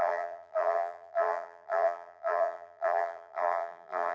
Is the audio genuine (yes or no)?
no